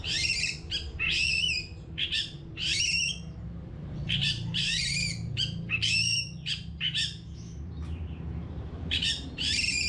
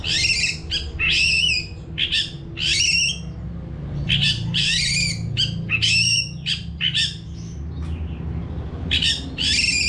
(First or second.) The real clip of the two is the second